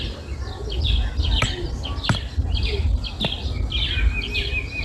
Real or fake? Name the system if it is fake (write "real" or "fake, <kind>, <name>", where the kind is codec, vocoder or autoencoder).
real